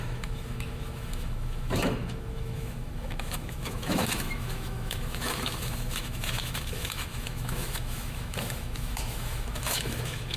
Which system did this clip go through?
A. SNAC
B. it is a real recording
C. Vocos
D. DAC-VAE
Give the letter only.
D